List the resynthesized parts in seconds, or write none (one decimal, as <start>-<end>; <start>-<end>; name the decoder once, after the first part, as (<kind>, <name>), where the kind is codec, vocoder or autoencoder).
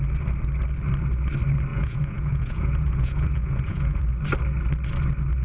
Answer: 1.7-4.1 (vocoder, Vocos)